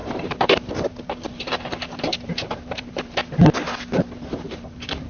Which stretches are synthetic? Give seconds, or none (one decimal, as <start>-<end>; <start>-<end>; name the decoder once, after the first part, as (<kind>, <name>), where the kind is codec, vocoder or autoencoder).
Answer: 0.0-3.2 (vocoder, BigVGAN v2); 4.1-5.1